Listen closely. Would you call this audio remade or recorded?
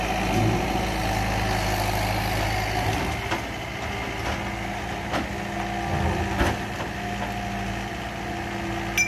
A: recorded